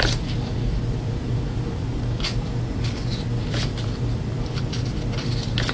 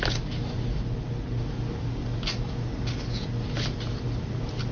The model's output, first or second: first